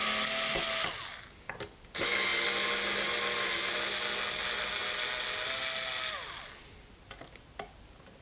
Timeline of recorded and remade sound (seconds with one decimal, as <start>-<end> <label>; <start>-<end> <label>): 0.0-8.2 recorded

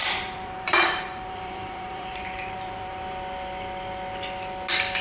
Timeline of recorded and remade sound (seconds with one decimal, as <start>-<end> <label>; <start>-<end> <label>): 0.0-3.0 remade; 3.0-5.0 recorded